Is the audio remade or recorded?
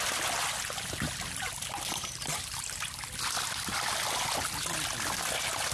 recorded